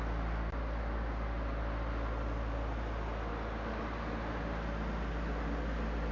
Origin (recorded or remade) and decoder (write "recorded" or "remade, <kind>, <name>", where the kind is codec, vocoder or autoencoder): recorded